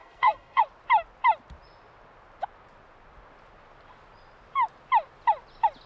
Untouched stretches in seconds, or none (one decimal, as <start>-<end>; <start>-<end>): 0.6-5.9